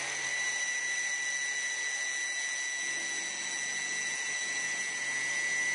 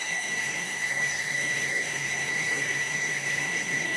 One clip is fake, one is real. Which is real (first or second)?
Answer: first